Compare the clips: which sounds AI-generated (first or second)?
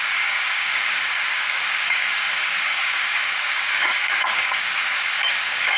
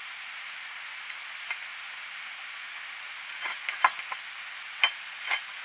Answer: first